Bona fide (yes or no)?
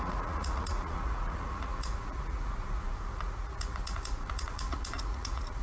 no